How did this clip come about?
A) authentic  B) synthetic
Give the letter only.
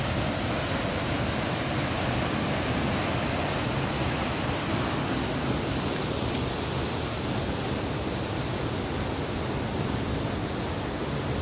A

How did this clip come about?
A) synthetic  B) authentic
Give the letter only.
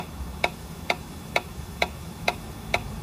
A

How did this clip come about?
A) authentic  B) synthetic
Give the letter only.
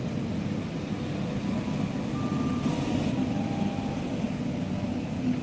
A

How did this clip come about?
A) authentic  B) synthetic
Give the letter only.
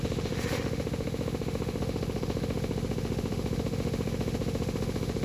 B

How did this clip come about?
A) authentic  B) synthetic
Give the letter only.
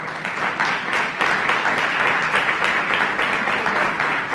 A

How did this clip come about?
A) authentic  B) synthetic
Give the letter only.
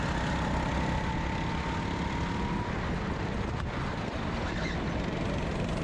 A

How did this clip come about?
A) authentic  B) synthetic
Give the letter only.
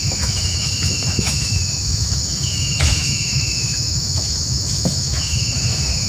B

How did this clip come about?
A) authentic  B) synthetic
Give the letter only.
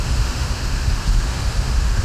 B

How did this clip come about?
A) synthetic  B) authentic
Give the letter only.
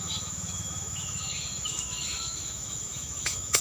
A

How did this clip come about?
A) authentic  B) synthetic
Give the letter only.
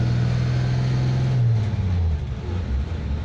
A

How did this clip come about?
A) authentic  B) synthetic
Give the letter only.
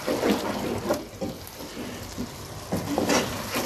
A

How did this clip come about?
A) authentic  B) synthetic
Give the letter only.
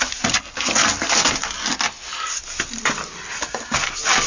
A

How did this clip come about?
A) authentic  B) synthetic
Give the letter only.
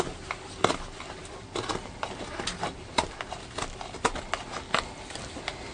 A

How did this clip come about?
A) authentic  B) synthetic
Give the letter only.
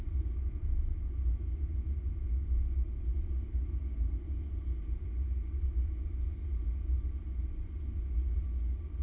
A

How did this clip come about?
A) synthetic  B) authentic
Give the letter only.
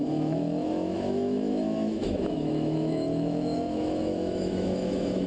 A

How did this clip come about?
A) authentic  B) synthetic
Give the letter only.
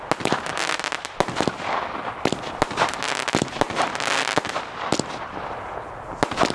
A